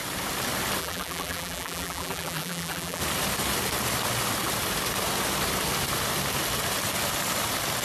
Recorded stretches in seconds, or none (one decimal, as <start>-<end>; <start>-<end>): 0.0-0.8; 3.0-7.8